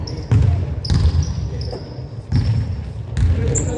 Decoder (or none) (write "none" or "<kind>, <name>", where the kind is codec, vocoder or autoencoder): none